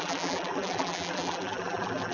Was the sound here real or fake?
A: fake